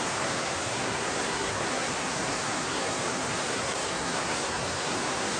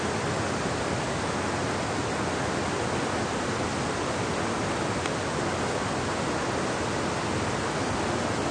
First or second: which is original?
second